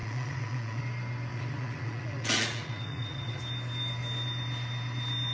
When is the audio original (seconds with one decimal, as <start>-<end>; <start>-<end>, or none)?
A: 0.8-1.3; 3.4-5.3